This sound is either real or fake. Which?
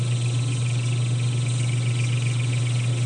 real